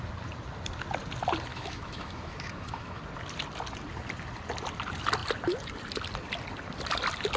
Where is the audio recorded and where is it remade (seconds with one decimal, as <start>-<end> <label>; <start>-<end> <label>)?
0.0-1.5 recorded; 1.5-3.0 remade; 3.0-7.4 recorded